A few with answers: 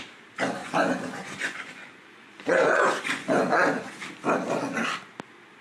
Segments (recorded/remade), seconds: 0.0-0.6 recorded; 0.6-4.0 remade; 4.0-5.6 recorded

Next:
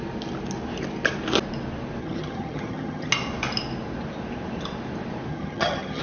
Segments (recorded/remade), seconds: 0.0-2.0 recorded; 2.0-3.1 remade; 3.1-5.3 recorded; 5.3-6.0 remade